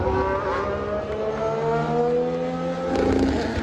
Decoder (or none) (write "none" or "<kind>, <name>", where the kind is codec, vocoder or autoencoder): none